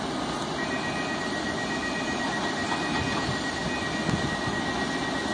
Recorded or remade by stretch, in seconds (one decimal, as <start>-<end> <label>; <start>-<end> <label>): 0.0-5.3 recorded